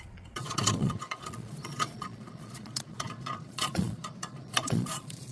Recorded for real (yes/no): no